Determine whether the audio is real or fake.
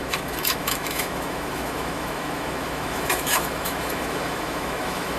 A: fake